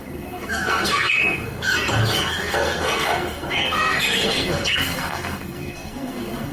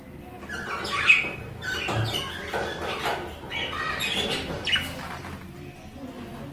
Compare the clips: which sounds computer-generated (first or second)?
first